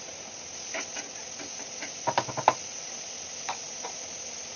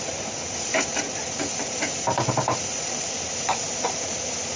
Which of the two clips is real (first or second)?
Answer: first